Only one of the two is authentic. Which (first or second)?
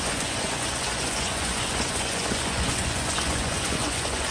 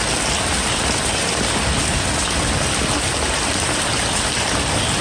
second